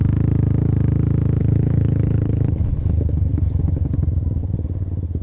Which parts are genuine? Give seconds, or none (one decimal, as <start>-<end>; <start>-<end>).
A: 0.0-1.4; 3.9-4.4